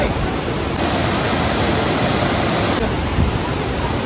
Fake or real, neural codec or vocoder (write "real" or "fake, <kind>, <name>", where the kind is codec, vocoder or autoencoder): real